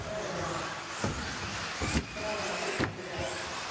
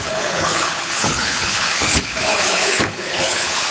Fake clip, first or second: second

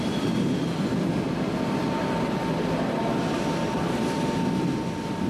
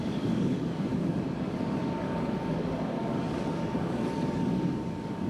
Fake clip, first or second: second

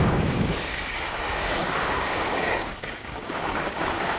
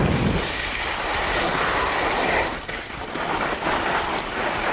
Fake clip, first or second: first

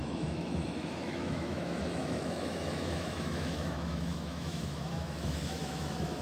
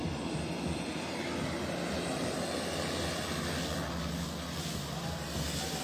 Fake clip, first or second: first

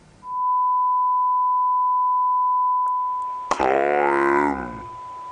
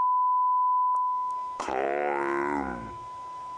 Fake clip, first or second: second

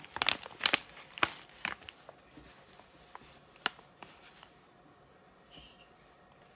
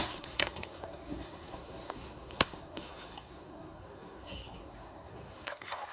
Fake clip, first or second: second